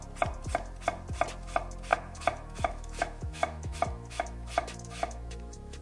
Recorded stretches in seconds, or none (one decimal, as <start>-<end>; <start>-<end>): 0.0-1.9